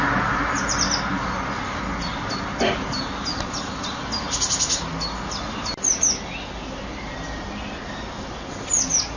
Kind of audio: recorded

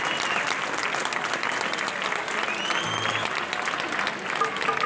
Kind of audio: recorded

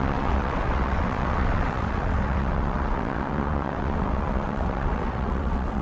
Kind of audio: remade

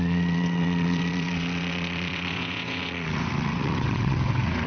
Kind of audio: remade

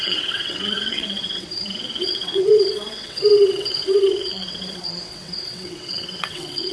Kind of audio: remade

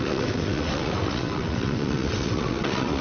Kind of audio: remade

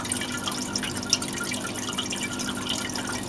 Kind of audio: recorded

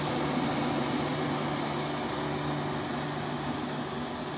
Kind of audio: recorded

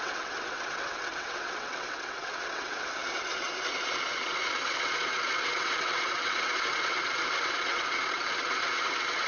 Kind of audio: remade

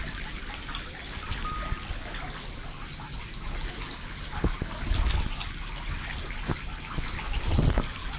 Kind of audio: recorded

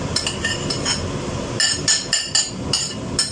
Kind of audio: recorded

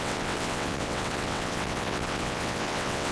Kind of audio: remade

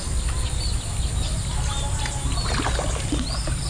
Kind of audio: recorded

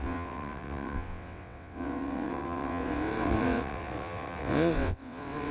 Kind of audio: remade